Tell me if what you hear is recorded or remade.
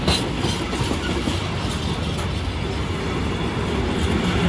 recorded